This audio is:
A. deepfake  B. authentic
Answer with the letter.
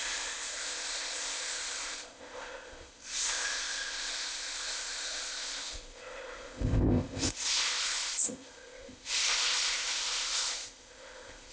A